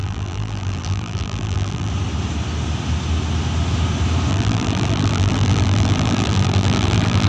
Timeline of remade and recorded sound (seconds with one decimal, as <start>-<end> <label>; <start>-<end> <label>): 0.0-1.9 remade; 1.9-4.3 recorded; 4.3-7.3 remade